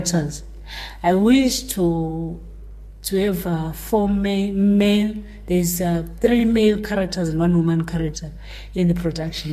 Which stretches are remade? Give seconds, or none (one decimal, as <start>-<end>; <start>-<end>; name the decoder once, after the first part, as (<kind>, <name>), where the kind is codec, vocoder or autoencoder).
0.0-2.1 (codec, SNAC); 2.9-9.5